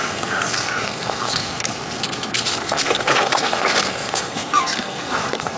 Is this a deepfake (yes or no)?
yes